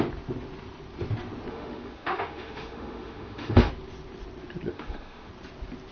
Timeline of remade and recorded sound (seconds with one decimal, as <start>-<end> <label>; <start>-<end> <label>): 0.0-1.5 recorded; 1.5-3.7 remade; 3.7-4.7 recorded; 4.7-5.3 remade; 5.3-5.9 recorded